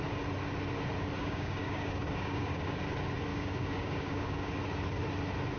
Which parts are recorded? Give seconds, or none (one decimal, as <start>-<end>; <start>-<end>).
0.0-1.2; 2.8-3.3; 4.5-5.6